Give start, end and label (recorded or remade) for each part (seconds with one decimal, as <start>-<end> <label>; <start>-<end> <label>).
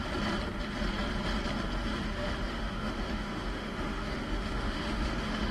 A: 0.0-2.1 recorded; 2.1-5.5 remade